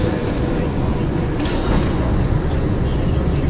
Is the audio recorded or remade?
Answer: remade